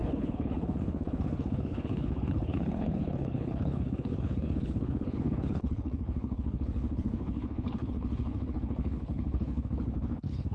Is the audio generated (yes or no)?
yes